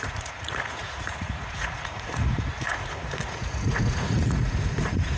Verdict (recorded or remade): remade